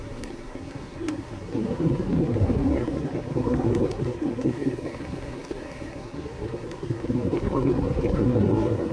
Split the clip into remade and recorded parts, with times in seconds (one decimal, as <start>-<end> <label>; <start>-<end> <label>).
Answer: 0.0-8.9 remade